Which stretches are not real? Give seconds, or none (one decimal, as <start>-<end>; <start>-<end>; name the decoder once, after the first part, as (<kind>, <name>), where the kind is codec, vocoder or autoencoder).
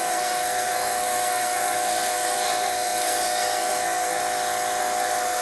0.0-4.2 (codec, SNAC); 4.8-5.4